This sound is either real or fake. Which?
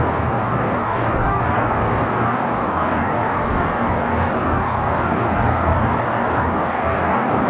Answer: fake